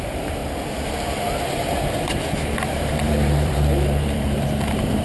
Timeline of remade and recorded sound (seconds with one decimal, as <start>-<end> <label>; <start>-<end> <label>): 0.0-0.4 remade; 0.4-2.1 recorded; 2.1-5.0 remade